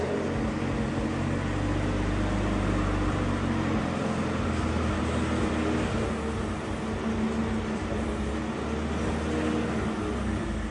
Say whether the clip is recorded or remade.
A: recorded